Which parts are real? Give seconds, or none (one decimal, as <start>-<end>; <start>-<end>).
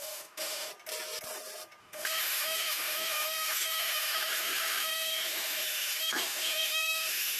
0.7-1.8